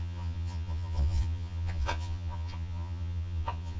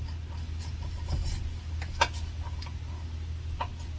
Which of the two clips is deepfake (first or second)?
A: first